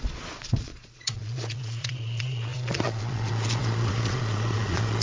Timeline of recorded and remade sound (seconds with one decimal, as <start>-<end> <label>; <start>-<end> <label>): 0.0-5.0 remade